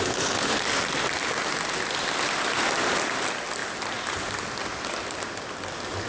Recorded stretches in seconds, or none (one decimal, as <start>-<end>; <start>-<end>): 0.0-6.1